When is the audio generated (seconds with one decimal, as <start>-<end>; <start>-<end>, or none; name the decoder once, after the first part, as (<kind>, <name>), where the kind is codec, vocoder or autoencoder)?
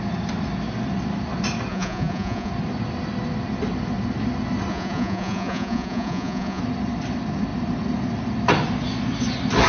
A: 1.7-2.5 (vocoder, Vocos); 4.7-6.6